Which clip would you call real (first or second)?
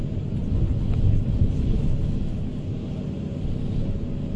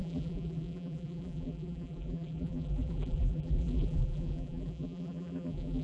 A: first